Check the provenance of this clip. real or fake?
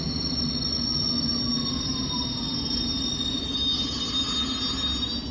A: real